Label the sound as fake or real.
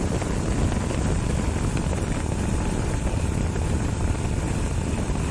fake